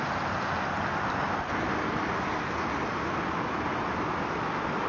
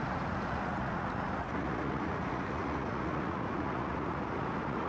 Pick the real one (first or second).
first